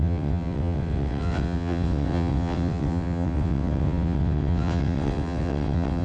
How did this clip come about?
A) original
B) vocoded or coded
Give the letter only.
B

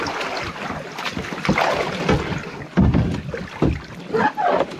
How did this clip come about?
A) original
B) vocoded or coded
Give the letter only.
A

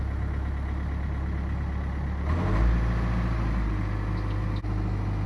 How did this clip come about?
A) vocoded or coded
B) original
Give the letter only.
B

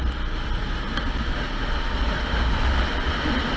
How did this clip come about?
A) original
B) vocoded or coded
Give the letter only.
A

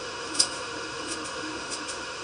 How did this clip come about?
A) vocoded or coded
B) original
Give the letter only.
A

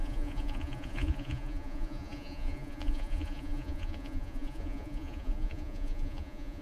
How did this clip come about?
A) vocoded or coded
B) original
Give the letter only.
A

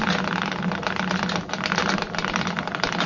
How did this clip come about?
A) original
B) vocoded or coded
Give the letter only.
B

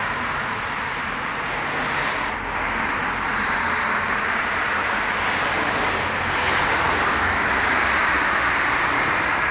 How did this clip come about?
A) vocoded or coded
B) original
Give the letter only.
B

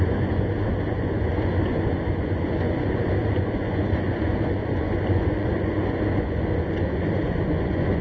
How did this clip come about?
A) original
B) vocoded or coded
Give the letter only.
B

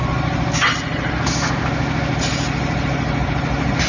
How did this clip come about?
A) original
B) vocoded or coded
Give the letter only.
A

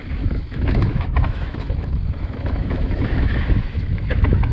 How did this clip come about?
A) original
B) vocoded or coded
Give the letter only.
B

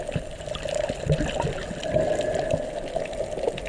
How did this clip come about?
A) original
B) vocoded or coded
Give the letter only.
A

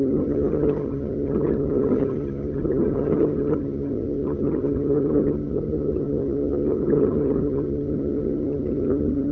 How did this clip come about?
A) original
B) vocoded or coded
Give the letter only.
B